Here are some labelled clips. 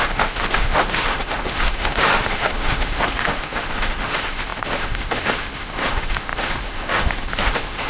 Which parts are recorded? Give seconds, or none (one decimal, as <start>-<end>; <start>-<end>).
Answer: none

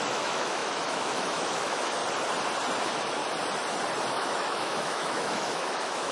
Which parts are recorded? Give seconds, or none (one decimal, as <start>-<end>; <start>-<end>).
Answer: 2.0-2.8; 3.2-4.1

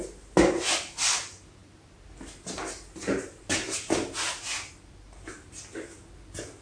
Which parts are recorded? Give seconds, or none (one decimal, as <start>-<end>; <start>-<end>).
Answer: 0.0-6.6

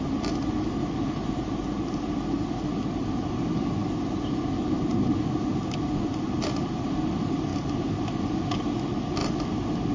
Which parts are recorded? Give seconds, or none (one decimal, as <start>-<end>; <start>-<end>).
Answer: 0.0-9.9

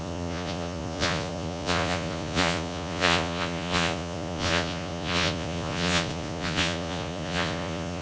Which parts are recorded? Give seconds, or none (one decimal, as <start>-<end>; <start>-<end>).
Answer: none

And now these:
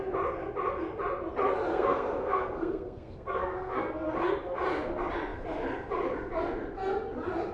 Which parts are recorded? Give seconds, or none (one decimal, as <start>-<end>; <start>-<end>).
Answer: 0.0-1.7; 4.3-7.5

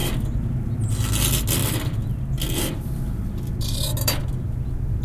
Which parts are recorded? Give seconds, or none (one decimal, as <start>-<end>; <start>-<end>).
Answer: 0.0-5.0